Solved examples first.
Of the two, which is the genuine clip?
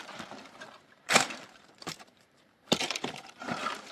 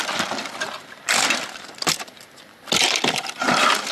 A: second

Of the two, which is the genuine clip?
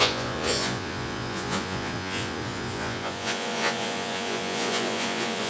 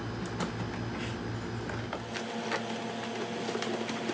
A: second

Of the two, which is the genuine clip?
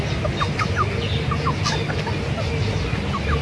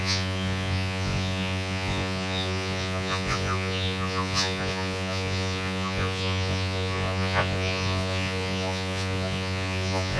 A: first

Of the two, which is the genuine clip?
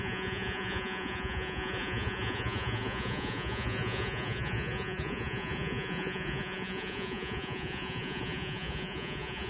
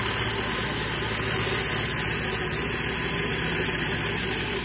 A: second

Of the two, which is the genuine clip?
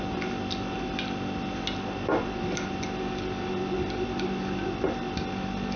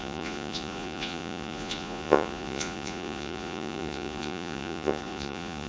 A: first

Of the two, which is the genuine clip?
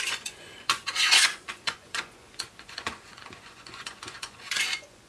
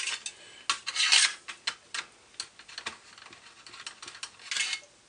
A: second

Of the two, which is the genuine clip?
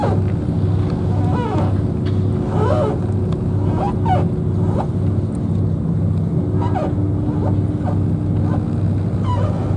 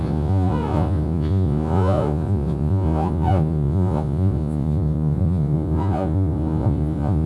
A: first